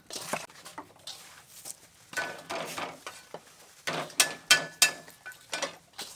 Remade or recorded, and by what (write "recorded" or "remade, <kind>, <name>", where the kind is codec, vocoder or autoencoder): recorded